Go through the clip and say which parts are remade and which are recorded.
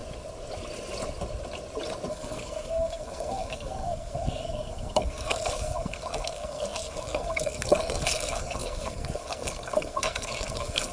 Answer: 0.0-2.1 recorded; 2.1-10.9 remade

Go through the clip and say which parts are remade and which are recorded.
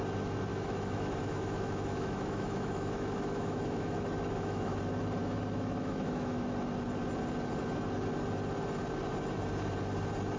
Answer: 0.0-0.5 recorded; 0.5-4.8 remade; 4.8-5.2 recorded; 5.2-6.5 remade; 6.5-10.4 recorded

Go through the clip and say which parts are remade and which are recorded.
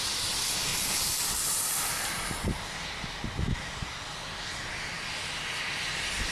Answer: 0.0-0.7 recorded; 0.7-2.3 remade; 2.3-6.3 recorded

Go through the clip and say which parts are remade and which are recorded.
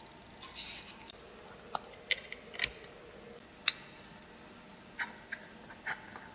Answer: 0.0-6.3 recorded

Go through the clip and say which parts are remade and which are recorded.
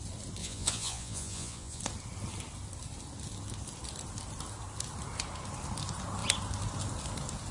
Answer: 0.0-0.4 recorded; 0.4-1.8 remade; 1.8-7.5 recorded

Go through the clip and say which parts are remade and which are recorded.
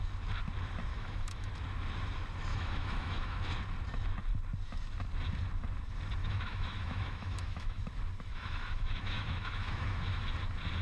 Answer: 0.0-0.9 recorded; 0.9-1.5 remade; 1.5-2.5 recorded; 2.5-3.4 remade; 3.4-6.2 recorded; 6.2-7.8 remade; 7.8-8.3 recorded; 8.3-10.2 remade; 10.2-10.8 recorded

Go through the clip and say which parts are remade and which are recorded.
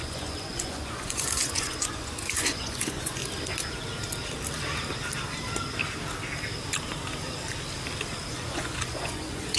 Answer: 0.0-3.2 remade; 3.2-8.3 recorded; 8.3-9.6 remade